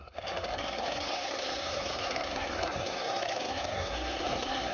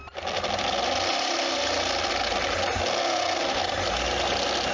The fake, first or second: first